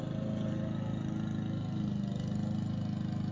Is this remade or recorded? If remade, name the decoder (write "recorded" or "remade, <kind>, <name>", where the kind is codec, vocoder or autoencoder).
recorded